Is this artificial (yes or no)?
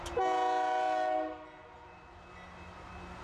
no